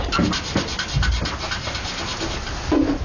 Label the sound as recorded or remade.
recorded